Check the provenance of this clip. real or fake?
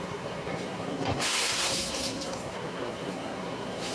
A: fake